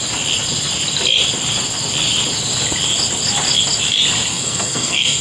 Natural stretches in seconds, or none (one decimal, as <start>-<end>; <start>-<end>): 0.0-4.3